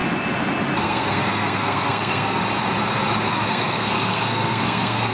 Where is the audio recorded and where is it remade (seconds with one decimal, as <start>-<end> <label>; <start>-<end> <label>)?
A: 0.0-0.8 recorded; 0.8-2.4 remade; 2.4-3.3 recorded; 3.3-5.1 remade